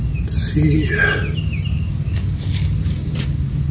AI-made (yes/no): no